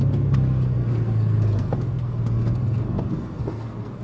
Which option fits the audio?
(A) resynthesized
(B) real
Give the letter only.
A